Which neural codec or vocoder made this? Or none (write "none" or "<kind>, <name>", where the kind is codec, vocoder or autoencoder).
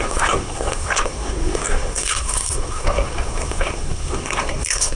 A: codec, SNAC